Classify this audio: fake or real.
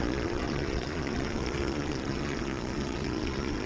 fake